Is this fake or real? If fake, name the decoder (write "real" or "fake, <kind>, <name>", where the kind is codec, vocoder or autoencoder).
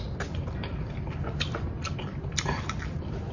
real